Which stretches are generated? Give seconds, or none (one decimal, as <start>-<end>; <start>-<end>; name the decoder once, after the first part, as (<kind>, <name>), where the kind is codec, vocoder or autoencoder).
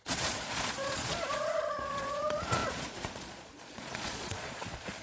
0.0-5.0 (vocoder, Vocos)